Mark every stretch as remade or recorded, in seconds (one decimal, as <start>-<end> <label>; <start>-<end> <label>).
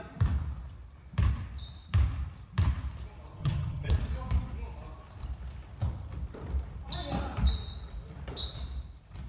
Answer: 0.0-3.4 recorded; 3.4-3.9 remade; 3.9-9.3 recorded